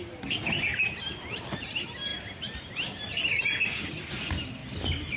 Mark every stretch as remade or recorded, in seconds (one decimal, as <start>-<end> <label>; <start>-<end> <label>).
0.0-5.2 recorded